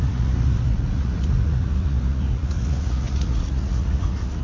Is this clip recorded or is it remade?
remade